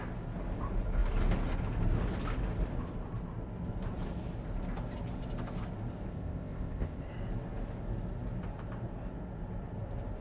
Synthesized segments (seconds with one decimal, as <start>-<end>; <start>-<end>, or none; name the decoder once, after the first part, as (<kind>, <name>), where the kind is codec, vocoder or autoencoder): 6.1-7.1 (codec, ZipCodec)

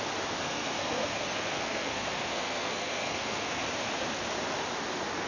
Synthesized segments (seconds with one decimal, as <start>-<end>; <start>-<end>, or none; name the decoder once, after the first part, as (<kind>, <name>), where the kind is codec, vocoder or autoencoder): 0.4-3.6 (codec, SNAC)

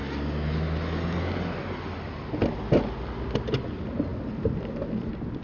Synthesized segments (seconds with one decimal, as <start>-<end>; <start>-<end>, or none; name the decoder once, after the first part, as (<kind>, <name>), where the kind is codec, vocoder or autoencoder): none